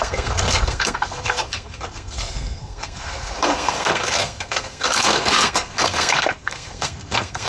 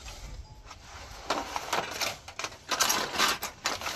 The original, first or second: second